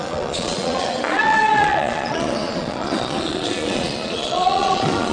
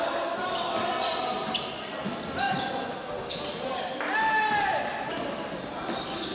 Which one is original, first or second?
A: second